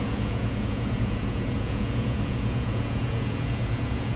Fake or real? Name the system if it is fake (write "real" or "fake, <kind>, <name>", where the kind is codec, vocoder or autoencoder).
fake, vocoder, Vocos